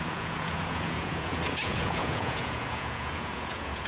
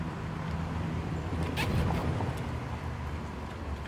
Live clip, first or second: second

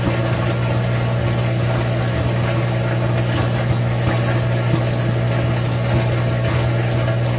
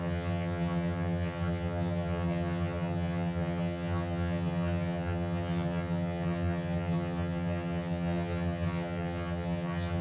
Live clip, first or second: first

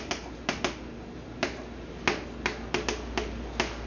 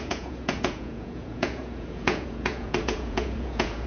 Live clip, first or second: first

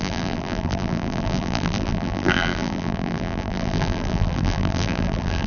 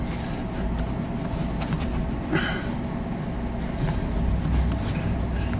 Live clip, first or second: second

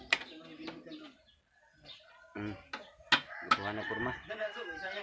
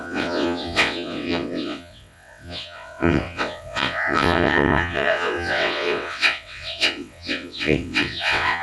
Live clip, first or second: first